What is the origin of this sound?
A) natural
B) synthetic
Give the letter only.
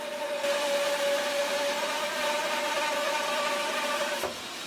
A